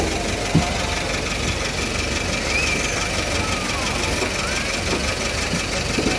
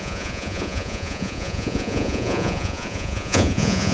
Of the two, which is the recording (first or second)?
first